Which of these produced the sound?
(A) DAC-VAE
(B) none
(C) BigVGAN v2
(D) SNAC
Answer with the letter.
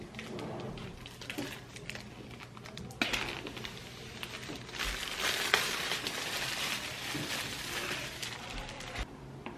B